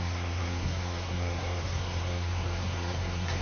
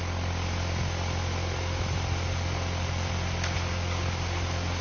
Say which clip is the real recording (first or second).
second